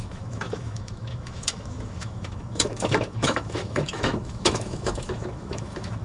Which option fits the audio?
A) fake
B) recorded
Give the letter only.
A